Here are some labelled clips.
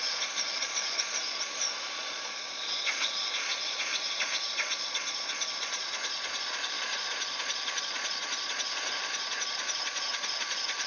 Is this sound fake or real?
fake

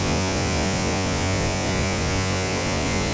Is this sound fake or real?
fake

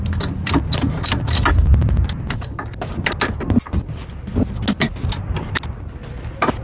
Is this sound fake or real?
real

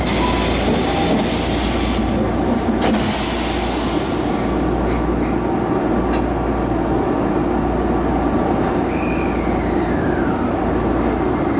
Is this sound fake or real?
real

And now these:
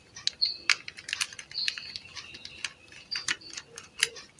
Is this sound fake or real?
real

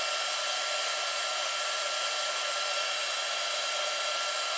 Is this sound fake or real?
real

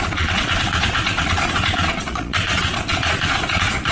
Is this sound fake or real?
fake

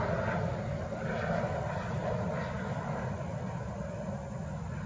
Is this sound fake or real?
real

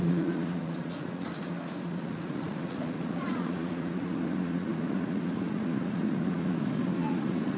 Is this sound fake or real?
fake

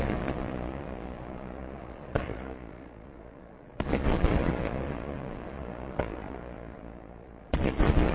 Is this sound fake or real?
fake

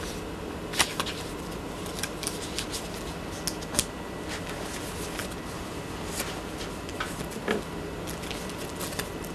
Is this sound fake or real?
real